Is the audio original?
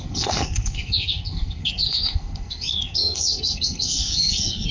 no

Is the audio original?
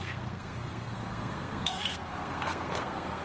no